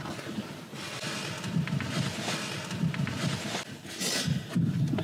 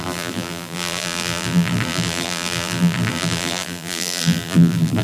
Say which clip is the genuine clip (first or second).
first